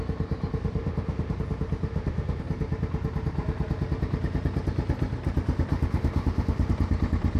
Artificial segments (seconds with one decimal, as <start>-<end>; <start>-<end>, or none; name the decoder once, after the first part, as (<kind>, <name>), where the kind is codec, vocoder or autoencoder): 0.8-1.3 (autoencoder, DAC-VAE); 1.9-2.4; 5.7-6.7